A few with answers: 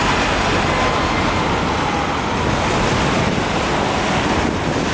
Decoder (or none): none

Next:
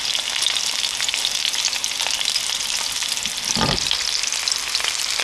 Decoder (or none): none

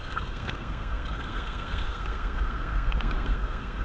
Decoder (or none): codec, SNAC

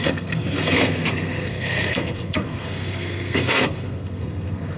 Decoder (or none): codec, SNAC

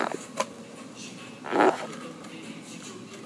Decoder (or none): none